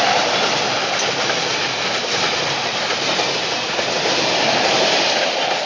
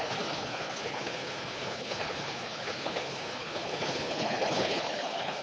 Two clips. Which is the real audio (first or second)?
first